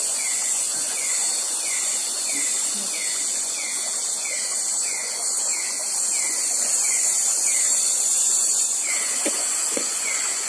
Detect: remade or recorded remade